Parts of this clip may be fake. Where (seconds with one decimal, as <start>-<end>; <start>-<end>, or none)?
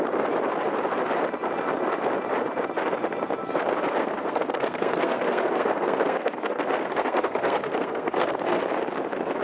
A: 4.0-8.6